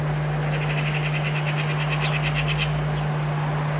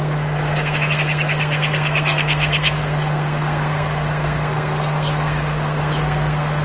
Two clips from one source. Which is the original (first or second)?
first